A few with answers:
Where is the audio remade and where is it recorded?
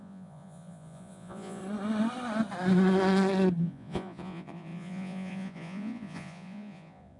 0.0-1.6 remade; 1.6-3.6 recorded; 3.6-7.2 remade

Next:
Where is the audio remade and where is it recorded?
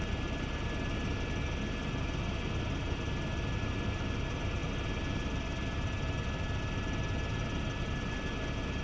0.0-8.8 recorded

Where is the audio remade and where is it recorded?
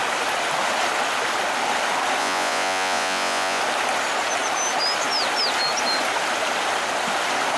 0.0-2.2 recorded; 2.2-3.6 remade; 3.6-7.6 recorded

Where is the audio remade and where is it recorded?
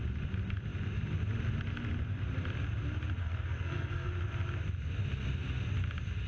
0.0-3.2 recorded; 3.2-4.1 remade; 4.1-6.3 recorded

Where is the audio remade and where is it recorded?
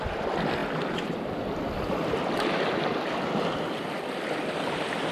0.0-5.1 recorded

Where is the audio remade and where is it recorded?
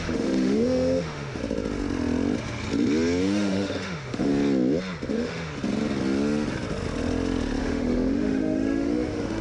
0.0-1.4 remade; 1.4-3.2 recorded; 3.2-4.3 remade; 4.3-5.1 recorded; 5.1-5.5 remade; 5.5-7.6 recorded; 7.6-9.4 remade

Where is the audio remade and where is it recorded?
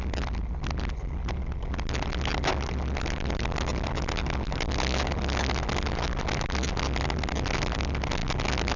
0.0-8.8 recorded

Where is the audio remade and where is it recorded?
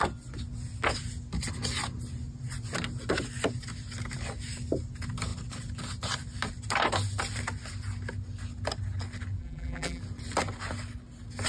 0.0-9.4 recorded; 9.4-10.0 remade; 10.0-11.5 recorded